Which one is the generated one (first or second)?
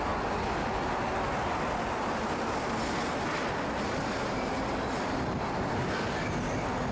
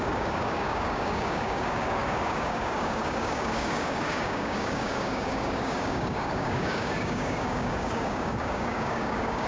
second